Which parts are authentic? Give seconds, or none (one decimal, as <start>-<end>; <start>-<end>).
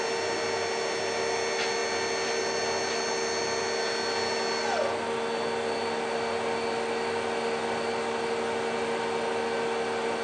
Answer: 0.0-10.2